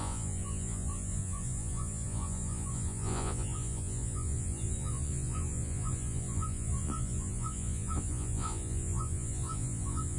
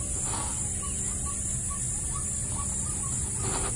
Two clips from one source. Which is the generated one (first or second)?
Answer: first